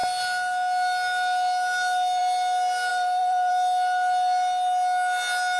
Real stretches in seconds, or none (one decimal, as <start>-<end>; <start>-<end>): 0.0-2.9; 3.5-5.6